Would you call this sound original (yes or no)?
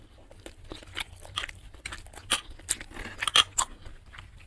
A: yes